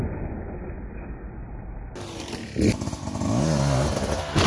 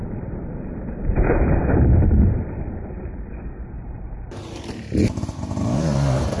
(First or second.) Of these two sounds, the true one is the first